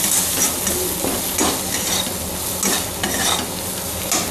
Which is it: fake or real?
real